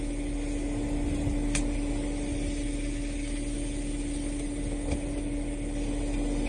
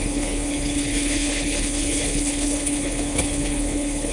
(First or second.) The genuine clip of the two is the first